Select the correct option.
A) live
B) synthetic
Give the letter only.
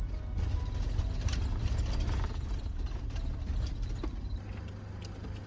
A